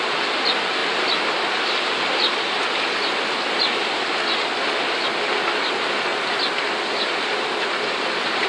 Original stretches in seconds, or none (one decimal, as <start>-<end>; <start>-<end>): 0.8-5.4; 6.1-6.9